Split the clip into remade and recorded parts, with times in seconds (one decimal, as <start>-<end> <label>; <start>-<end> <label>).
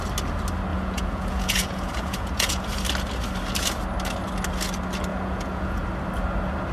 0.0-0.7 recorded; 0.7-2.7 remade; 2.7-5.1 recorded; 5.1-5.8 remade; 5.8-6.7 recorded